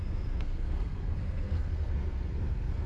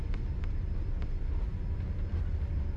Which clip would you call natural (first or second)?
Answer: second